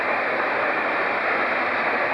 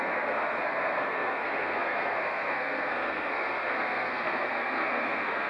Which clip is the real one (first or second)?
first